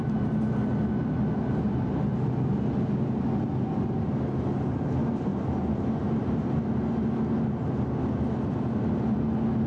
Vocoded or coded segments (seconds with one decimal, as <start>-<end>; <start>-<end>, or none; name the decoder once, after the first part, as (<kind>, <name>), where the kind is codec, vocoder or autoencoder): none

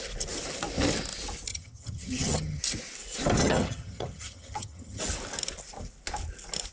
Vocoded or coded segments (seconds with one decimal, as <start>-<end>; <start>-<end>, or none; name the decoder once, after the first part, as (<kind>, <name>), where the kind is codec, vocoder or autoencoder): 1.5-2.6 (vocoder, HiFi-GAN); 3.4-5.0

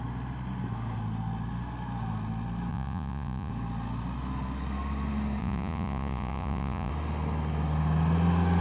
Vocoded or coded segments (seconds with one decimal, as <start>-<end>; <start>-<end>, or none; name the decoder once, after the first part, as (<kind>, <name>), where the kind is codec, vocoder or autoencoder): 2.7-3.5 (vocoder, Vocos); 5.4-6.9

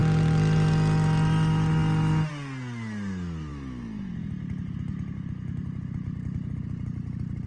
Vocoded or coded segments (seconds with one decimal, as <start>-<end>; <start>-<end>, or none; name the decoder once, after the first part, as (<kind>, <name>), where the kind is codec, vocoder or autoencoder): 3.5-4.1 (autoencoder, DAC-VAE)

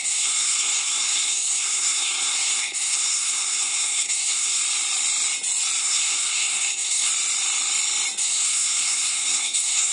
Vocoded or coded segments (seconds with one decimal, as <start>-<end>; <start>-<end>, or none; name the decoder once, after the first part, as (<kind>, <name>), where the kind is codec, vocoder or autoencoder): 0.0-4.6 (codec, SNAC); 5.8-7.1; 8.2-9.9